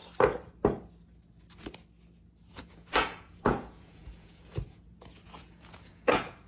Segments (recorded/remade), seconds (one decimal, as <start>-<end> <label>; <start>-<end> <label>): 0.0-2.5 recorded; 2.5-6.5 remade